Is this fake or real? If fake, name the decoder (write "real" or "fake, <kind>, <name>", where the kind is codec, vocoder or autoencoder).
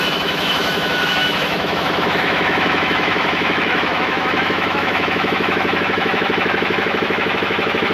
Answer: fake, autoencoder, DAC-VAE